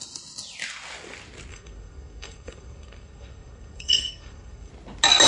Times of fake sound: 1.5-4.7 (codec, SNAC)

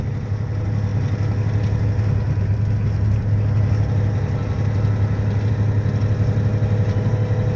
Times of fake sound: none

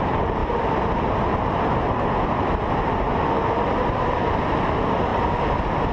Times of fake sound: none

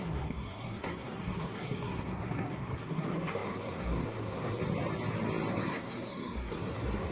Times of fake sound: 0.0-4.6 (codec, SNAC); 5.5-7.1